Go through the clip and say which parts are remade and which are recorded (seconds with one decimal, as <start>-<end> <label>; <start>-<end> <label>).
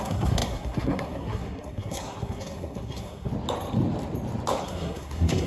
0.0-3.3 remade; 3.3-4.6 recorded; 4.6-5.5 remade